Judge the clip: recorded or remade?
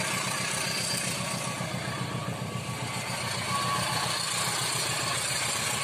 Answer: recorded